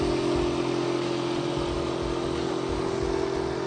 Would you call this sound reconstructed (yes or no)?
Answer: no